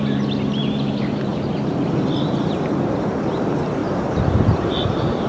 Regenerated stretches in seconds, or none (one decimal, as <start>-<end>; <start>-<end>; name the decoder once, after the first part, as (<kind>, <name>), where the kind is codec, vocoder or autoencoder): 1.3-2.0 (vocoder, BigVGAN v2); 3.8-5.3